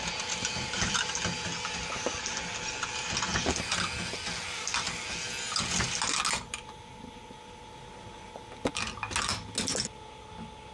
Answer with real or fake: real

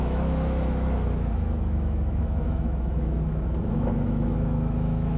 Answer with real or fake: fake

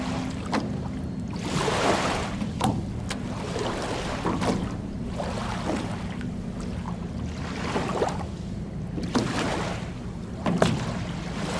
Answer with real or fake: real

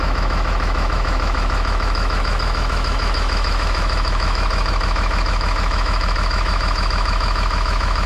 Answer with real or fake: fake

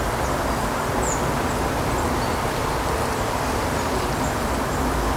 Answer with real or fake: real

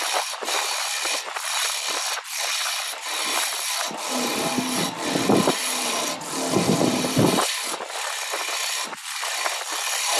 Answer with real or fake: real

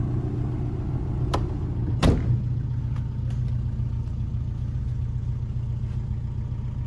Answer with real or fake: real